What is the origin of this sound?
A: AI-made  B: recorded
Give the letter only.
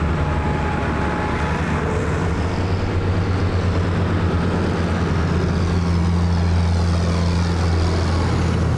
B